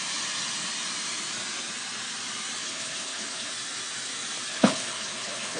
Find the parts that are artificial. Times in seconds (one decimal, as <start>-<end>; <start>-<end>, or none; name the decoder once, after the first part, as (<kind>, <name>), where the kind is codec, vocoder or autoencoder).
2.6-3.5 (codec, HILCodec); 4.5-5.6